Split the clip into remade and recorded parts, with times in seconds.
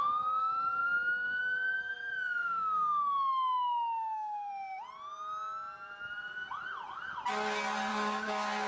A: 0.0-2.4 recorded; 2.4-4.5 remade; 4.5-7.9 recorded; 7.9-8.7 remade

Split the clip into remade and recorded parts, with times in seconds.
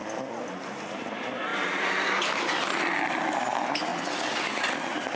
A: 0.0-5.2 recorded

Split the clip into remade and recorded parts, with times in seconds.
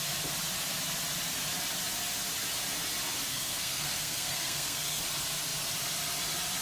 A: 0.0-3.3 recorded; 3.3-5.0 remade; 5.0-6.6 recorded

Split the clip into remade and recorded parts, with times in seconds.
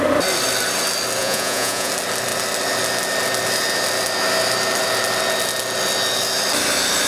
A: 0.0-1.2 recorded; 1.2-1.9 remade; 1.9-7.1 recorded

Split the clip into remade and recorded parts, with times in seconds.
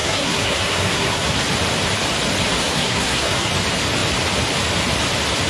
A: 0.0-1.4 remade; 1.4-2.6 recorded; 2.6-3.5 remade; 3.5-5.5 recorded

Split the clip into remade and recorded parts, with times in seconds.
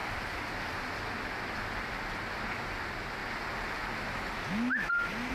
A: 0.0-0.9 remade; 0.9-5.3 recorded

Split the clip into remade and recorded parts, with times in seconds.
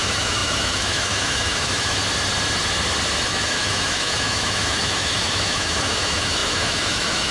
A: 0.0-2.0 remade; 2.0-3.2 recorded; 3.2-7.3 remade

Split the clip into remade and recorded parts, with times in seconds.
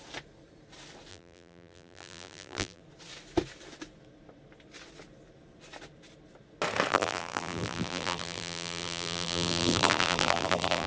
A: 0.0-1.1 recorded; 1.1-2.8 remade; 2.8-6.9 recorded; 6.9-10.9 remade